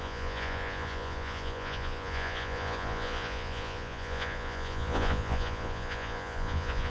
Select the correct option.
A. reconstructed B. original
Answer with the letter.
A